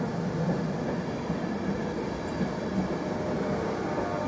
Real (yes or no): yes